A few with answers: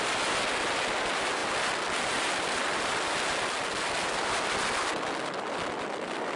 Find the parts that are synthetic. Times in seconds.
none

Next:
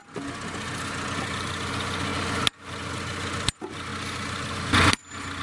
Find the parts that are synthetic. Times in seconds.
none

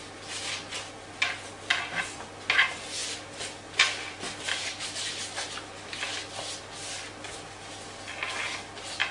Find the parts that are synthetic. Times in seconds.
none